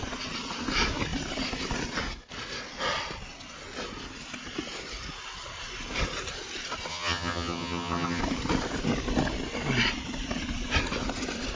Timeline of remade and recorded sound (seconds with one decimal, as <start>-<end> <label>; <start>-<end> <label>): 0.0-6.9 recorded; 6.9-8.2 remade; 8.2-11.6 recorded